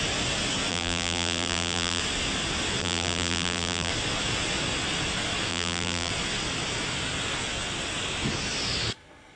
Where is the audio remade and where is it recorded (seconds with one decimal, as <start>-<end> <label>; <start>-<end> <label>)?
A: 0.0-0.7 recorded; 0.7-2.0 remade; 2.0-2.8 recorded; 2.8-3.9 remade; 3.9-5.5 recorded; 5.5-6.1 remade; 6.1-9.4 recorded